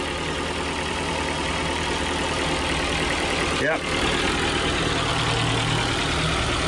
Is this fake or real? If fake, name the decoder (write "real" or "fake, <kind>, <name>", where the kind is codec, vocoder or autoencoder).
real